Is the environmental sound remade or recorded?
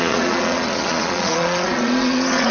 remade